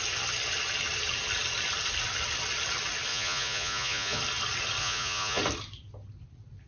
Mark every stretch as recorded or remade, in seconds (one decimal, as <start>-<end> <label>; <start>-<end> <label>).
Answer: 0.0-3.1 recorded; 3.1-4.2 remade; 4.2-4.8 recorded; 4.8-5.4 remade; 5.4-6.7 recorded